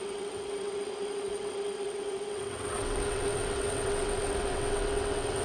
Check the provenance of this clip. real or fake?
fake